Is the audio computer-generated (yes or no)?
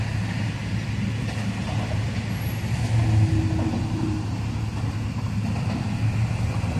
no